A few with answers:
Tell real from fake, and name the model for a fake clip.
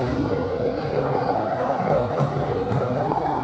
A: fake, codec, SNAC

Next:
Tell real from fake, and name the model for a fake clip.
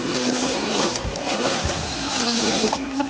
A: fake, codec, SNAC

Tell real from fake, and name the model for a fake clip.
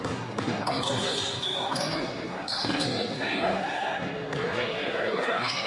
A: fake, codec, SNAC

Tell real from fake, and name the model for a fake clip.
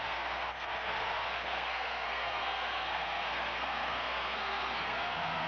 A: fake, codec, SNAC